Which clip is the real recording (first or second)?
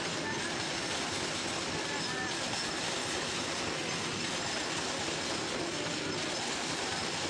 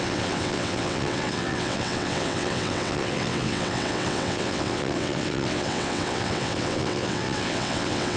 first